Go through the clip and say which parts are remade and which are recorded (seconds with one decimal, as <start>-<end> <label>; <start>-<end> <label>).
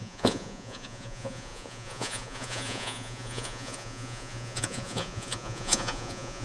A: 0.0-6.4 remade